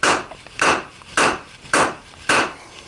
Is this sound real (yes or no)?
no